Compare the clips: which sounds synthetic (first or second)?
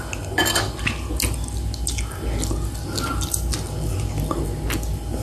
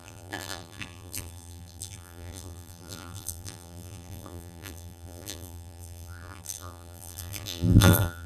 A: second